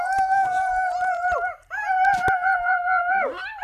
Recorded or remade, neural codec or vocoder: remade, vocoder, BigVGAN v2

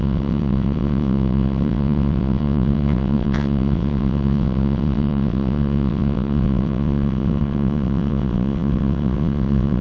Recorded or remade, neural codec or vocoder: remade, vocoder, WaveNeXt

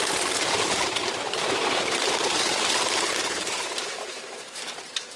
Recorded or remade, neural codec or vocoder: remade, vocoder, BigVGAN v2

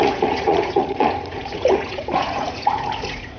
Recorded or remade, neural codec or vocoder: remade, vocoder, Vocos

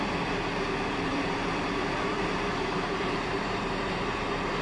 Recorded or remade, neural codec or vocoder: remade, vocoder, BigVGAN v2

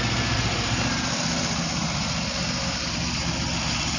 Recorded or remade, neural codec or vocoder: recorded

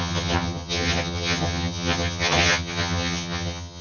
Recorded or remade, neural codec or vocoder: remade, vocoder, HiFi-GAN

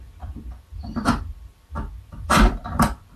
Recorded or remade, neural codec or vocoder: remade, vocoder, BigVGAN v2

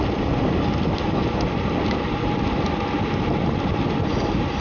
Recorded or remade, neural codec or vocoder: recorded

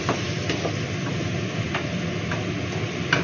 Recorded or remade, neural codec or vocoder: recorded